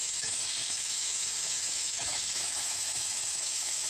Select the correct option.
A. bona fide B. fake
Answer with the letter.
B